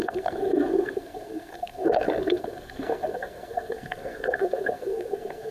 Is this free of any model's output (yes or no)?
no